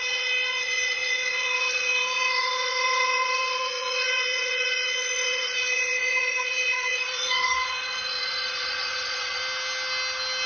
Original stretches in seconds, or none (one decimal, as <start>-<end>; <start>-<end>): 9.4-10.5